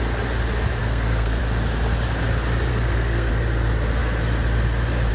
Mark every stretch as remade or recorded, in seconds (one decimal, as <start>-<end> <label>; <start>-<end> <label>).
0.0-0.8 recorded; 0.8-1.4 remade; 1.4-2.7 recorded; 2.7-3.3 remade; 3.3-5.1 recorded